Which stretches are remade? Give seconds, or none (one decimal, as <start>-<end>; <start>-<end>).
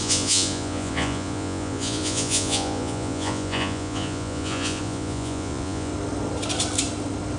0.0-5.9